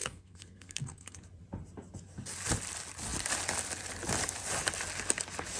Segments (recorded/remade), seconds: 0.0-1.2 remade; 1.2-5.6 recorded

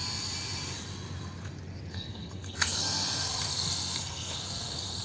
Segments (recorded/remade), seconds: 0.0-1.9 recorded; 1.9-5.0 remade